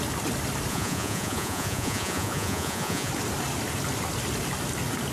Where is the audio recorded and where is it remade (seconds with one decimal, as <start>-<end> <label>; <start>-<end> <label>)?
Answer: 0.0-0.7 recorded; 0.7-3.1 remade; 3.1-5.1 recorded